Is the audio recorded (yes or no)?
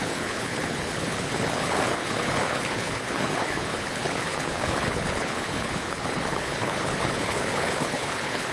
no